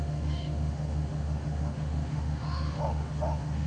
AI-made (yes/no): yes